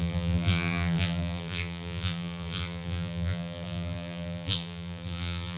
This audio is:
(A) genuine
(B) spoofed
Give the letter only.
B